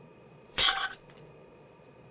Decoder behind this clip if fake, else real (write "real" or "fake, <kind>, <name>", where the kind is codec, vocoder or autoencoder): fake, vocoder, Vocos